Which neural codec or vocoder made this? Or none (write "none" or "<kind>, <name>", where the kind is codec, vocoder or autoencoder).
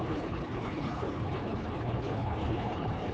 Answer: codec, HILCodec